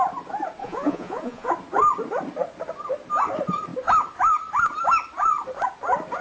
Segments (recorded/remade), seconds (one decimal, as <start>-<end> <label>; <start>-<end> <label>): 0.0-0.6 recorded; 0.6-1.5 remade; 1.5-6.2 recorded